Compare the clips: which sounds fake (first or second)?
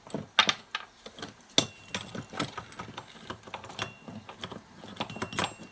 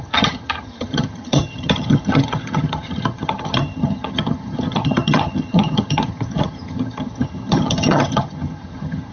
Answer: second